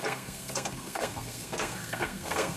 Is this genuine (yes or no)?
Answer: no